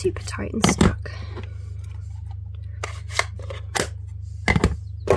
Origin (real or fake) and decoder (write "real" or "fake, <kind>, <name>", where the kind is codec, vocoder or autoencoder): real